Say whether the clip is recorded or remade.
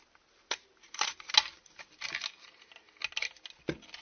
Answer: recorded